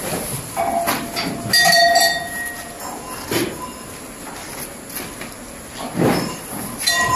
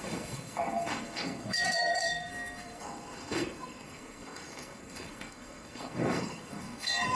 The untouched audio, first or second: first